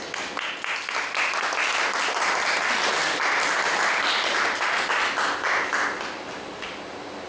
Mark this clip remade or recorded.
recorded